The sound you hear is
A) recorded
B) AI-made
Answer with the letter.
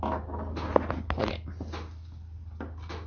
A